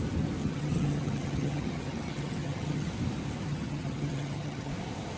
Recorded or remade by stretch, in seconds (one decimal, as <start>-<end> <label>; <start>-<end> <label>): 0.0-0.4 recorded; 0.4-2.9 remade; 2.9-3.5 recorded; 3.5-4.7 remade; 4.7-5.2 recorded